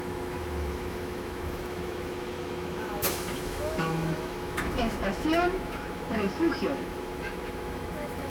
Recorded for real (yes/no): no